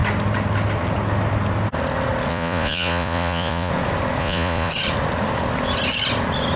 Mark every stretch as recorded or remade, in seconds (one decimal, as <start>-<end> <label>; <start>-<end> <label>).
0.0-2.3 recorded; 2.3-3.7 remade; 3.7-4.2 recorded; 4.2-4.7 remade; 4.7-6.6 recorded